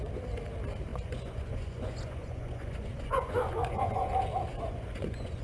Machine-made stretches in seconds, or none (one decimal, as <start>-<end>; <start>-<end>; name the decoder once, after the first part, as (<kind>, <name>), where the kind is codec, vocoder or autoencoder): 0.9-4.1 (vocoder, Vocos); 4.5-5.4